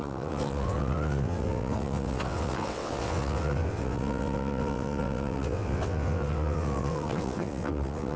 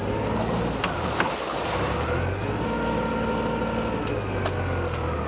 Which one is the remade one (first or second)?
first